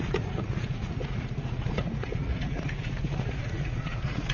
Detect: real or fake fake